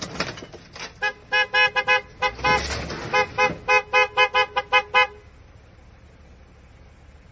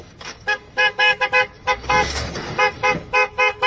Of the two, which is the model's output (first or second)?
second